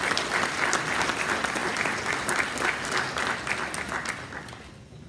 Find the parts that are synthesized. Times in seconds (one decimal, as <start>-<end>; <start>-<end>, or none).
none